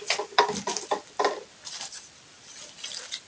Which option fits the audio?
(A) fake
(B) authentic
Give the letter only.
B